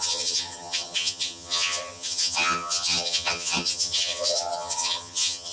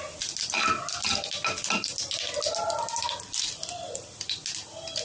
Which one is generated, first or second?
first